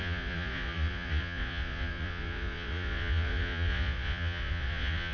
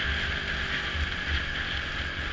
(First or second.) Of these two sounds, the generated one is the first